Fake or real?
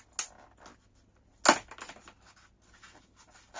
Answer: real